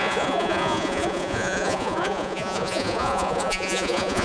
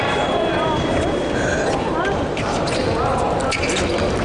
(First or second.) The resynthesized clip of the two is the first